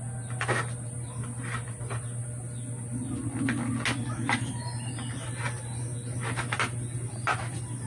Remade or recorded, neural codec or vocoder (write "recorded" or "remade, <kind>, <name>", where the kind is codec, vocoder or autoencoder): recorded